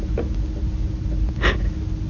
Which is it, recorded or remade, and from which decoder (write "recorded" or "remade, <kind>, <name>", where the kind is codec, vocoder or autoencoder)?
recorded